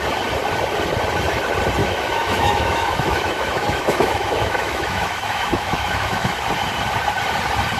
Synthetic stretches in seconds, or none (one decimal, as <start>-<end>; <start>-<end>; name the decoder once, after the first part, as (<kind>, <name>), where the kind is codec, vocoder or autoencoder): 1.8-6.5 (autoencoder, DAC-VAE)